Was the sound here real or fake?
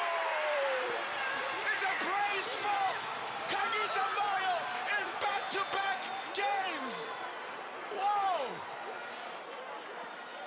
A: fake